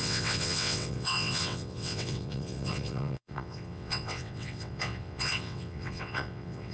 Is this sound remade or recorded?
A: remade